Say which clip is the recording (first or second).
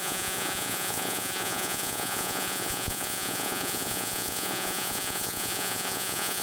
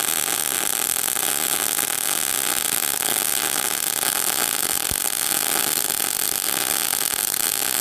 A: second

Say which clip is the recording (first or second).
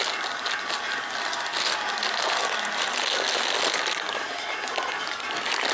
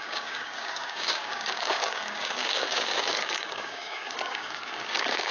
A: first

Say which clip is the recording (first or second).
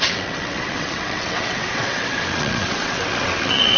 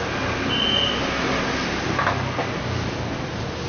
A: second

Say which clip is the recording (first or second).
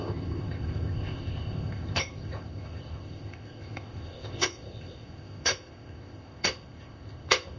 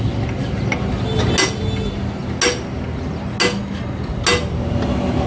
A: second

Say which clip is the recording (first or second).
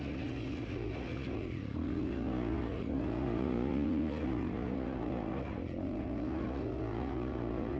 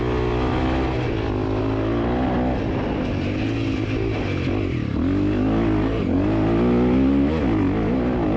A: second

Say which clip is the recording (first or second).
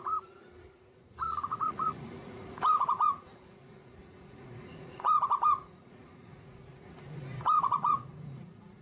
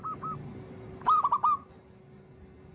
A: second